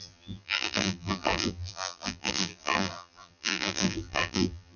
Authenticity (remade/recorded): remade